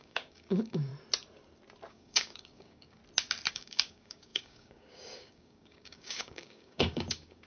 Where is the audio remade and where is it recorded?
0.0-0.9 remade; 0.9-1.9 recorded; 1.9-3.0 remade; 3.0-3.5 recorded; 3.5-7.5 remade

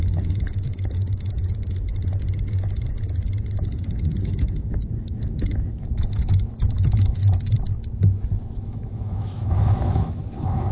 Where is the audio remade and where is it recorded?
0.0-1.9 remade; 1.9-3.7 recorded; 3.7-7.2 remade; 7.2-8.6 recorded; 8.6-10.7 remade

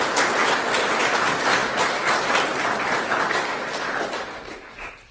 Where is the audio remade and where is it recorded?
0.0-5.1 recorded

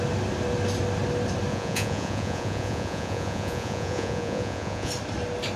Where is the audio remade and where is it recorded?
0.0-1.5 recorded; 1.5-4.9 remade; 4.9-5.6 recorded

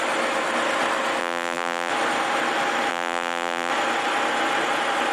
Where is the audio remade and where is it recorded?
0.0-1.2 recorded; 1.2-1.9 remade; 1.9-2.9 recorded; 2.9-3.7 remade; 3.7-5.1 recorded

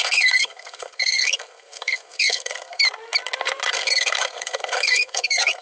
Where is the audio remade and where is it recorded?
0.0-2.8 remade; 2.8-3.7 recorded; 3.7-5.6 remade